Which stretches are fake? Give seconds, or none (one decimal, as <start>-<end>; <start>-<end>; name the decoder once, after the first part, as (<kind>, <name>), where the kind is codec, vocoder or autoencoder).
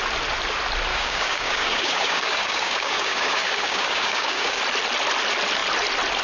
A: 0.9-4.6 (codec, DAC)